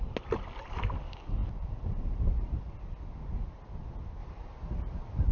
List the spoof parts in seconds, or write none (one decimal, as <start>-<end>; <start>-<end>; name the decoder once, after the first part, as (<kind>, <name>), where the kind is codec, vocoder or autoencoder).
1.4-2.6 (vocoder, BigVGAN v2); 4.2-5.3